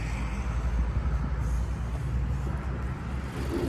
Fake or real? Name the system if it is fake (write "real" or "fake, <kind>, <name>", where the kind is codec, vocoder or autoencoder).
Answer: real